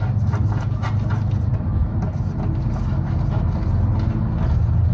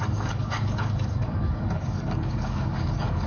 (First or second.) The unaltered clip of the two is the first